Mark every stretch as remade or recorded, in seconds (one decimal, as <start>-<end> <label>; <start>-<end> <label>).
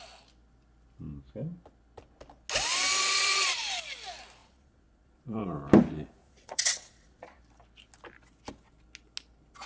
0.0-3.0 recorded; 3.0-3.6 remade; 3.6-4.4 recorded; 4.4-5.4 remade; 5.4-6.2 recorded; 6.2-7.4 remade; 7.4-9.7 recorded